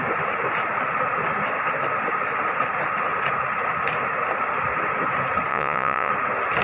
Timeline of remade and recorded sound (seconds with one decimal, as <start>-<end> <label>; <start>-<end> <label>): 0.0-5.5 recorded; 5.5-6.1 remade; 6.1-6.6 recorded